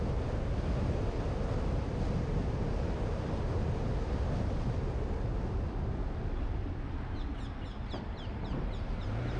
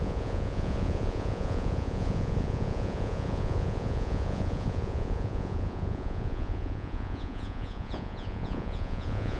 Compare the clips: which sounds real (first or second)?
first